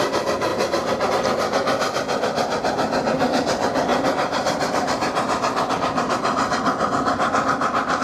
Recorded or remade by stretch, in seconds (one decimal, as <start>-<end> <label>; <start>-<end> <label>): 0.0-3.9 recorded; 3.9-5.7 remade; 5.7-8.0 recorded

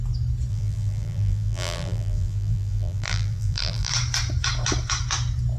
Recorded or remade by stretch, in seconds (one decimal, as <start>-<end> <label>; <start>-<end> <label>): 0.0-0.5 recorded; 0.5-3.9 remade; 3.9-5.6 recorded

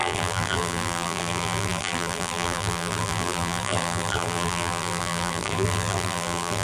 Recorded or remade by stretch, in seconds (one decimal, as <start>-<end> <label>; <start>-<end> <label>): 0.0-6.6 remade

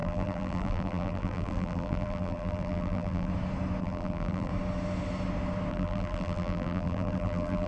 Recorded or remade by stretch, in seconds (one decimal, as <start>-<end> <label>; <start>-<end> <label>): 0.0-3.3 remade; 3.3-3.8 recorded; 3.8-4.5 remade; 4.5-5.7 recorded; 5.7-7.7 remade